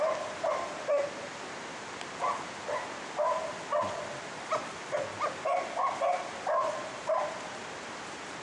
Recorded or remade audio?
recorded